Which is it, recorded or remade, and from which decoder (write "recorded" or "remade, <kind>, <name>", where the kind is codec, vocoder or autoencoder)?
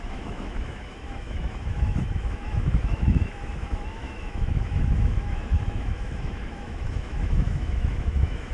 remade, autoencoder, DAC-VAE